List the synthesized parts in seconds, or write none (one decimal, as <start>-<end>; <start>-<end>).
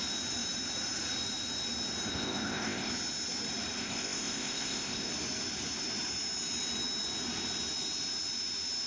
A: 2.1-2.9; 3.8-5.1